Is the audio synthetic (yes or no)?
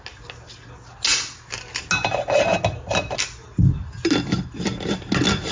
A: no